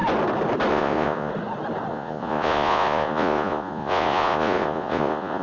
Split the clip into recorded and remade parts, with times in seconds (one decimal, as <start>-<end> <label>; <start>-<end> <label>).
0.0-0.7 recorded; 0.7-1.3 remade; 1.3-1.9 recorded; 1.9-5.4 remade